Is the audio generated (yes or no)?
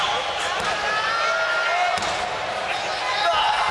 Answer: no